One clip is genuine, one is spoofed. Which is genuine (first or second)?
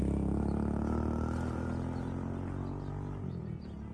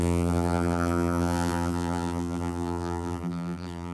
first